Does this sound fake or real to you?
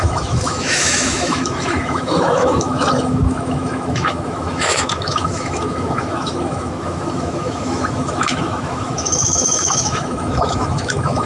fake